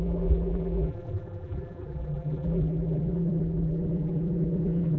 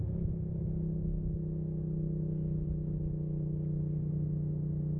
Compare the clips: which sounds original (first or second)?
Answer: second